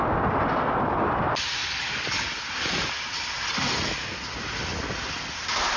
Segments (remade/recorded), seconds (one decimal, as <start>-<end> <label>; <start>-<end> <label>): 0.0-1.6 recorded; 1.6-2.2 remade; 2.2-5.8 recorded